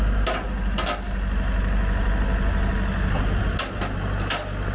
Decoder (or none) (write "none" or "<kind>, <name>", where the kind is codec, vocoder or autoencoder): none